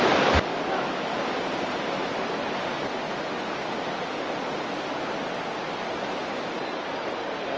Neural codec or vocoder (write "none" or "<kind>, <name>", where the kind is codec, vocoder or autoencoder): none